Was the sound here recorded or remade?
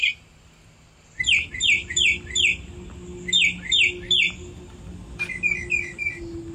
recorded